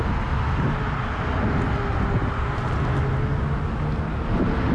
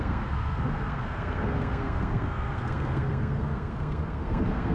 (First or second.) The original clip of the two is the first